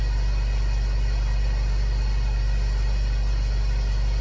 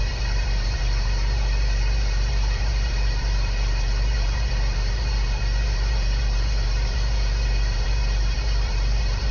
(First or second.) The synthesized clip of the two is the second